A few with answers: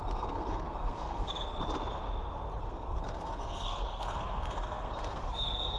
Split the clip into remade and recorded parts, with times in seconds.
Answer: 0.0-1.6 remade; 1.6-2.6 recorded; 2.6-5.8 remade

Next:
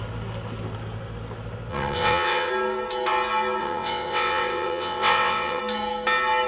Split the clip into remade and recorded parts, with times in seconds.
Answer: 0.0-1.7 recorded; 1.7-2.5 remade; 2.5-3.6 recorded; 3.6-5.6 remade; 5.6-6.5 recorded

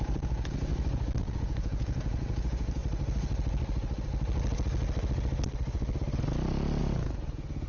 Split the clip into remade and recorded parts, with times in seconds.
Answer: 0.0-0.7 remade; 0.7-1.2 recorded; 1.2-2.8 remade; 2.8-6.8 recorded; 6.8-7.7 remade

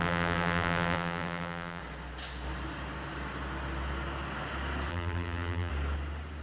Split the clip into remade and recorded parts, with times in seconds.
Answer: 0.0-1.8 remade; 1.8-4.9 recorded; 4.9-5.7 remade; 5.7-6.4 recorded

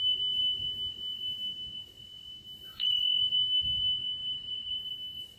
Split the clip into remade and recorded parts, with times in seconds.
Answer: 0.0-4.2 recorded; 4.2-4.9 remade; 4.9-5.4 recorded

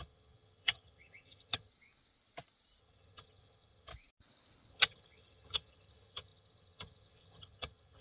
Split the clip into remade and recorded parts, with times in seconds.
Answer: 0.0-1.7 remade; 1.7-2.8 recorded; 2.8-3.9 remade; 3.9-4.7 recorded; 4.7-8.0 remade

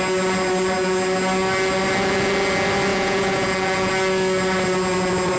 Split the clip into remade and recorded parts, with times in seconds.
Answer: 0.0-2.9 recorded; 2.9-3.9 remade; 3.9-5.4 recorded